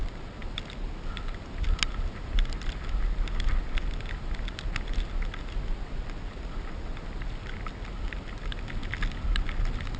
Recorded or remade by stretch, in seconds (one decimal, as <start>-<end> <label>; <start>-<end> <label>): 0.0-10.0 recorded

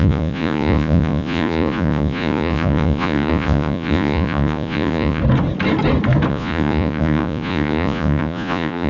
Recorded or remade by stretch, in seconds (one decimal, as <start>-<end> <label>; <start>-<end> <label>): 0.0-5.2 remade; 5.2-6.3 recorded; 6.3-8.9 remade

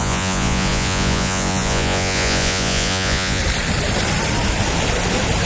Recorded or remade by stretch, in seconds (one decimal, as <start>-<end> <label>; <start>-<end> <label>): 0.0-3.4 remade; 3.4-5.5 recorded

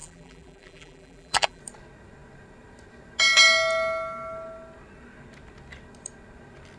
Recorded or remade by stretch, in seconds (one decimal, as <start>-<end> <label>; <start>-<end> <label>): 0.0-1.6 remade; 1.6-6.8 recorded

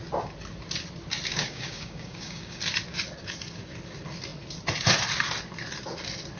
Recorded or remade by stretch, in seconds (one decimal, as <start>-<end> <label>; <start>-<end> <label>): 0.0-1.3 recorded; 1.3-2.6 remade; 2.6-6.4 recorded

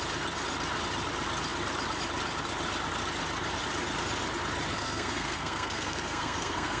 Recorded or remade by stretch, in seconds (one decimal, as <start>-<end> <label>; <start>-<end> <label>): 0.0-4.7 recorded; 4.7-6.8 remade

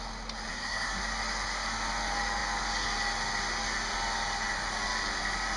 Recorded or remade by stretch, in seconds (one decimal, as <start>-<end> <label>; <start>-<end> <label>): 0.0-0.5 recorded; 0.5-1.0 remade; 1.0-5.6 recorded